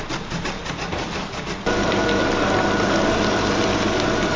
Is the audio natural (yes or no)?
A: yes